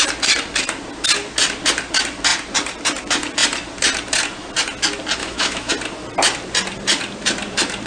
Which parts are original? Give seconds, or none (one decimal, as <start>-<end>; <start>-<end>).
0.0-5.2; 5.7-7.9

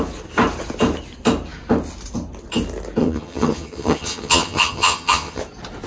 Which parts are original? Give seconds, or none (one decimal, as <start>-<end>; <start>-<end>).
0.0-3.0; 5.4-5.9

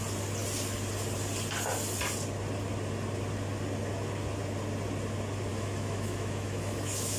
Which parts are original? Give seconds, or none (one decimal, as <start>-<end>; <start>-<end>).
0.0-5.5